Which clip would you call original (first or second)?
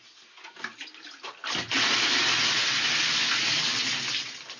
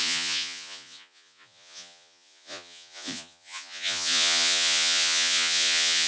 first